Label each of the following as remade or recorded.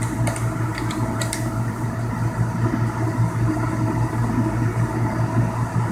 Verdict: recorded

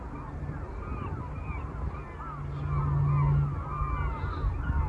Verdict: recorded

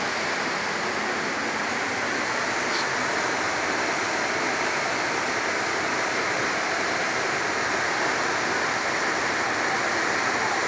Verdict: recorded